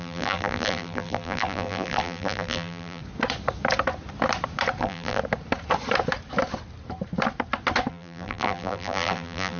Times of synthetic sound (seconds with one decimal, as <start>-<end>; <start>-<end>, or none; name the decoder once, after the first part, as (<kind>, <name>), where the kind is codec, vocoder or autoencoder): 0.0-3.0 (vocoder, BigVGAN v2); 4.8-5.2; 7.9-9.6